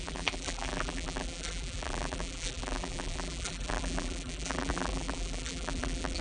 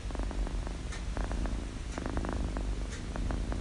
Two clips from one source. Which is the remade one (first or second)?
first